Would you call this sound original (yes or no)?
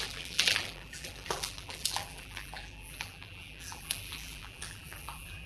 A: no